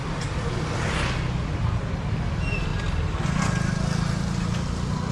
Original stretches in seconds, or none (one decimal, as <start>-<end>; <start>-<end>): 0.0-5.1